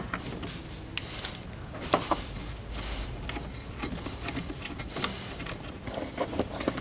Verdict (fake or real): real